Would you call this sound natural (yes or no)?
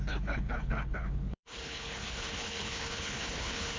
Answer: no